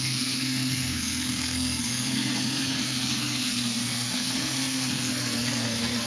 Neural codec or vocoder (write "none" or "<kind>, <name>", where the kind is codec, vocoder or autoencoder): codec, SNAC